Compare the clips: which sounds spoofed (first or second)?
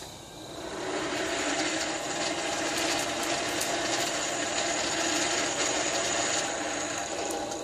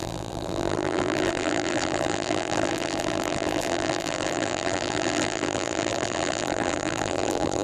second